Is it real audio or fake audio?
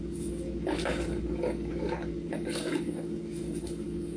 fake